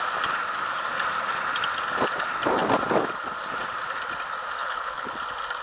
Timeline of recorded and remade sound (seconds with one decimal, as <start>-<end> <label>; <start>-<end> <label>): 0.0-4.6 recorded; 4.6-5.1 remade; 5.1-5.6 recorded